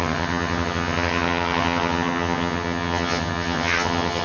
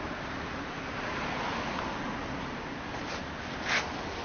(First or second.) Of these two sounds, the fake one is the first